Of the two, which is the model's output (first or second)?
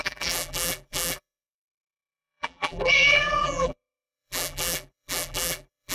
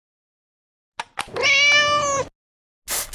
first